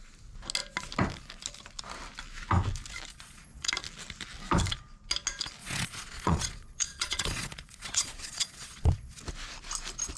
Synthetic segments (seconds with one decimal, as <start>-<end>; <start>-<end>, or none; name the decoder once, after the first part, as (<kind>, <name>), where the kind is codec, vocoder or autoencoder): 3.1-3.7 (vocoder, Vocos); 5.6-9.2